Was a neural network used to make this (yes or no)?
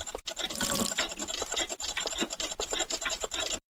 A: yes